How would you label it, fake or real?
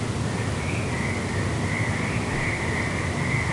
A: real